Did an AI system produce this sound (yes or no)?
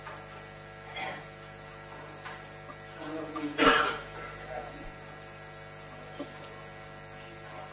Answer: no